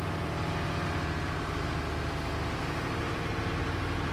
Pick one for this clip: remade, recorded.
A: recorded